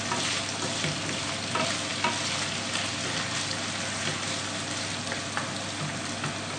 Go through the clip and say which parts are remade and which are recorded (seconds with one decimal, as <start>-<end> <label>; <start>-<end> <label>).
0.0-6.6 recorded